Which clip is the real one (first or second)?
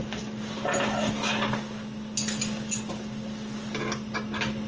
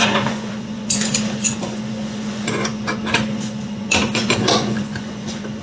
first